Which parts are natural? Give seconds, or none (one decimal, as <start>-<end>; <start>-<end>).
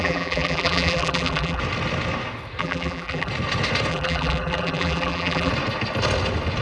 1.6-2.6; 3.3-3.9; 5.5-6.6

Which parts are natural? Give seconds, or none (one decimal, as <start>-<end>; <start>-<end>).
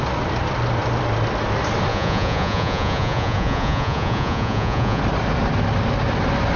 0.0-1.9; 5.0-6.6